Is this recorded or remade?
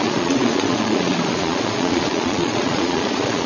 remade